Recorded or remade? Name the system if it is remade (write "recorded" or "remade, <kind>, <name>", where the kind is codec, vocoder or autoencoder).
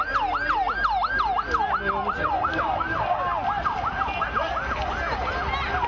recorded